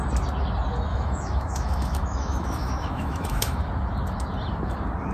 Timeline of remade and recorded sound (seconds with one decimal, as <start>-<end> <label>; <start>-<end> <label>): 0.0-0.9 recorded; 0.9-3.6 remade; 3.6-5.1 recorded